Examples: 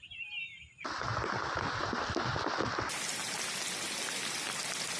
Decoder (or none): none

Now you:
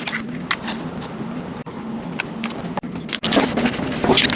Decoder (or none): none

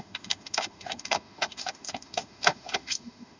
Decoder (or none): autoencoder, DAC-VAE